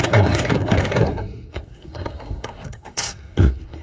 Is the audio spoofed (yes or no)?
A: yes